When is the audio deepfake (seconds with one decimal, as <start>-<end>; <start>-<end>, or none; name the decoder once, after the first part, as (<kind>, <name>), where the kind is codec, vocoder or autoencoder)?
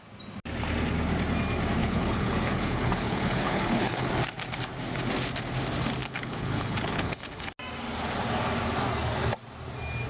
1.8-4.1 (codec, HILCodec); 6.0-7.5